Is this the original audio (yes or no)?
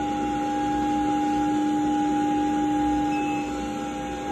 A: yes